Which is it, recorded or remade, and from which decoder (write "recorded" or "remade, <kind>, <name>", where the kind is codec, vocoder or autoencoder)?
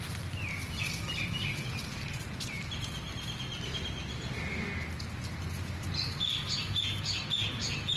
recorded